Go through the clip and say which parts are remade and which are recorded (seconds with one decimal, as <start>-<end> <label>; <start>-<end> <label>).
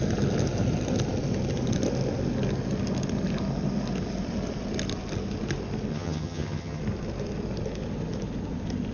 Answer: 0.0-5.9 recorded; 5.9-6.8 remade; 6.8-8.9 recorded